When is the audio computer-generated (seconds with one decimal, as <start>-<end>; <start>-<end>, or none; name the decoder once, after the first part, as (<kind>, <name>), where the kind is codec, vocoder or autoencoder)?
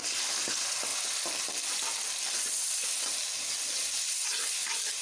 none